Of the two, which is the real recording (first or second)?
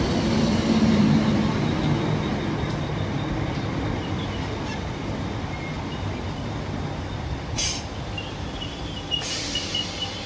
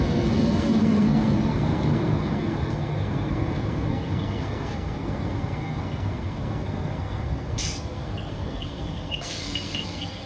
first